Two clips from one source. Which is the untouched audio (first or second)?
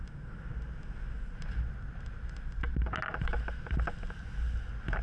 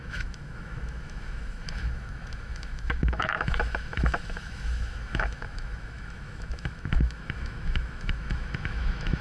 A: first